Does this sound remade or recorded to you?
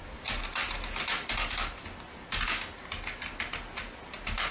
recorded